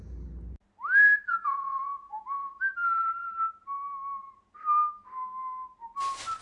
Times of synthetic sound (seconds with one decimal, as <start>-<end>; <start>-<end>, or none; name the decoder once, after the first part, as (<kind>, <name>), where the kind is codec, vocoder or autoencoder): 1.3-2.2 (vocoder, Vocos)